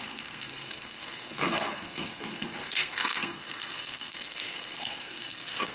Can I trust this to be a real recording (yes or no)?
no